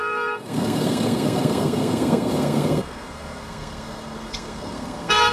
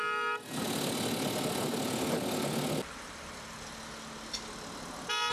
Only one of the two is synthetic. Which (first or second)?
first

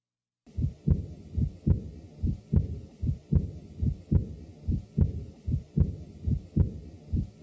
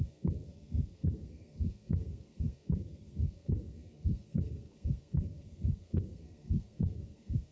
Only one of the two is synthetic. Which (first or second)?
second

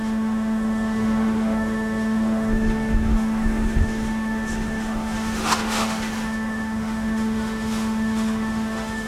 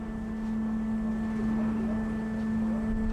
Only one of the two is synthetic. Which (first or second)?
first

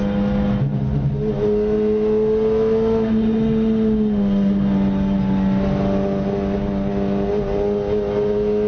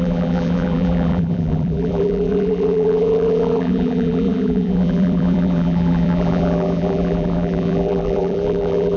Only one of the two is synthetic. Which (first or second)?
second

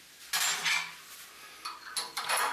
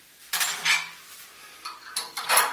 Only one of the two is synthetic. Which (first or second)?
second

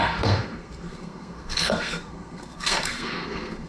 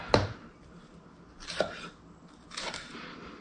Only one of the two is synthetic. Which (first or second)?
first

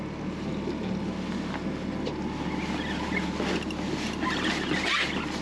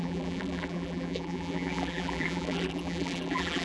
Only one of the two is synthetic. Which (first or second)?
second